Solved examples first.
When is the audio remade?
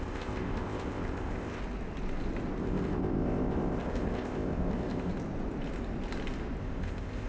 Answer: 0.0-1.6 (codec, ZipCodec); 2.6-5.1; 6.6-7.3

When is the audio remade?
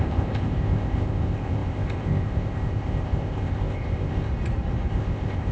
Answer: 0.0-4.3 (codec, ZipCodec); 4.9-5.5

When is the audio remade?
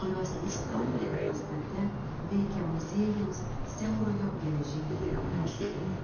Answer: 0.5-1.3 (codec, ZipCodec); 4.9-6.0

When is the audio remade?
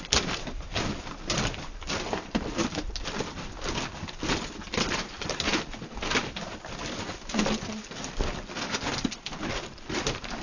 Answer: none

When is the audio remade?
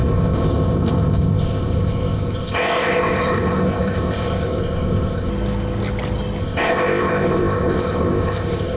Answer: 0.0-5.3 (codec, ZipCodec); 6.4-8.8